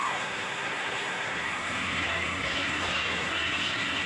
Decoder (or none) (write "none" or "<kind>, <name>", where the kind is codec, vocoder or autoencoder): codec, SNAC